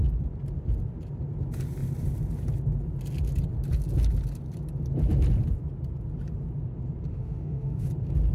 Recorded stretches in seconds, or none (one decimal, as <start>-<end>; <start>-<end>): 0.0-7.1; 7.9-8.3